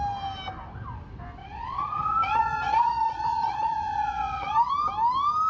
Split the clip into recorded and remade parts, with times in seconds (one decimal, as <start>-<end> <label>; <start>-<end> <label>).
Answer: 0.0-1.4 recorded; 1.4-4.7 remade; 4.7-5.5 recorded